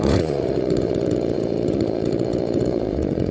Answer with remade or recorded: remade